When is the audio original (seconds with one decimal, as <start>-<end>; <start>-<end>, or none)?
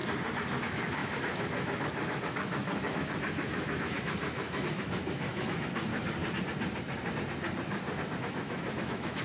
0.0-0.6; 5.9-8.2